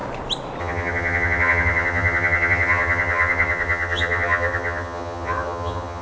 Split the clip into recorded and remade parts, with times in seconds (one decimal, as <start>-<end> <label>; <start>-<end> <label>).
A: 0.0-0.6 recorded; 0.6-6.0 remade